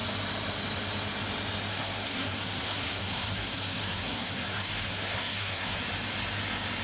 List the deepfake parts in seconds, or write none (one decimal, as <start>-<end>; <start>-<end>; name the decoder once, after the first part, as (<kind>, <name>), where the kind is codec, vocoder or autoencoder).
1.7-5.8 (codec, SNAC)